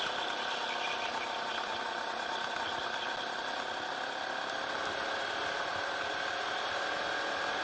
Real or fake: real